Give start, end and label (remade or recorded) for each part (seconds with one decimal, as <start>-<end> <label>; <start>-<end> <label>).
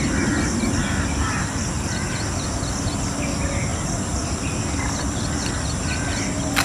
0.0-0.8 recorded; 0.8-3.0 remade; 3.0-6.6 recorded